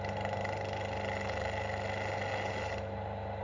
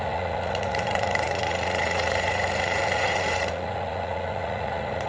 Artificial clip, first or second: second